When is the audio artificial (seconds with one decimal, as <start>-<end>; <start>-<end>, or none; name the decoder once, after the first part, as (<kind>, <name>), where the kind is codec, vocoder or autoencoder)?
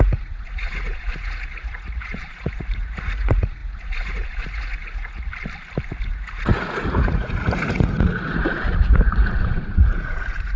0.0-5.3 (vocoder, Vocos); 6.0-10.6